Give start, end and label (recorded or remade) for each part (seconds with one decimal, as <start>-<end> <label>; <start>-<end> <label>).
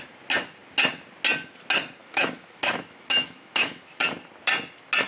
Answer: 0.0-2.0 recorded; 2.0-4.0 remade; 4.0-5.1 recorded